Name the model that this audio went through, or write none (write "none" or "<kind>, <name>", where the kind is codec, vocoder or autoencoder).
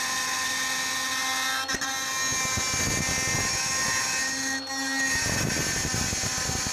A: none